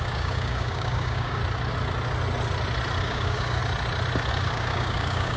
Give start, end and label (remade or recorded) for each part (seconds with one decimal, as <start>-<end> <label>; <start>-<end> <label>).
0.0-1.4 remade; 1.4-3.0 recorded; 3.0-3.6 remade; 3.6-4.3 recorded; 4.3-5.4 remade